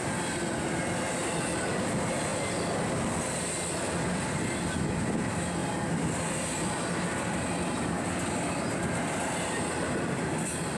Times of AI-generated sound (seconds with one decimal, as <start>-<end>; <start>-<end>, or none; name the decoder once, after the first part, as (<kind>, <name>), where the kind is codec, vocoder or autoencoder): none

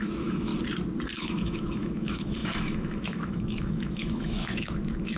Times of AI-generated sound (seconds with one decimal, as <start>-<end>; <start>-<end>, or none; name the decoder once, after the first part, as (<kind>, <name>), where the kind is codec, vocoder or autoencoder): 0.0-0.5 (autoencoder, DAC-VAE); 1.2-5.2

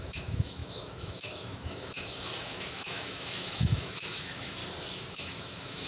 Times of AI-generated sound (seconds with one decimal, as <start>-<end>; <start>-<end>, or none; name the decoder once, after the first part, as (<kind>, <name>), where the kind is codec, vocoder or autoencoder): 0.0-4.6 (autoencoder, DAC-VAE); 5.1-5.9

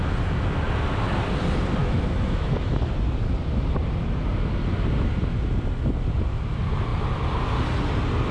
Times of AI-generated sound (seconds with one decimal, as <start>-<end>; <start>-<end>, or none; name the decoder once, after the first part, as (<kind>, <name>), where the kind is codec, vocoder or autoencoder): 1.8-2.7 (autoencoder, DAC-VAE)

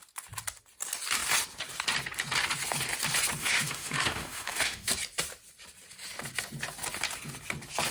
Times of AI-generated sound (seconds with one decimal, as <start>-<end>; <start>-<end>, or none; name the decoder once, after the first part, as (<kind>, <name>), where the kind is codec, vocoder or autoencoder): 3.4-4.9 (autoencoder, DAC-VAE)